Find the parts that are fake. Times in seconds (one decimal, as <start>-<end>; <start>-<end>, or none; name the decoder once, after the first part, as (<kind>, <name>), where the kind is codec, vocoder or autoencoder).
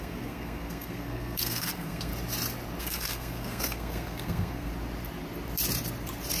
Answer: 0.0-2.1 (codec, SNAC); 2.8-4.7